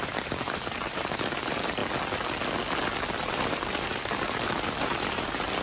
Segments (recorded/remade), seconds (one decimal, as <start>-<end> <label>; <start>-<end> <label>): 0.0-1.8 remade; 1.8-3.3 recorded; 3.3-5.6 remade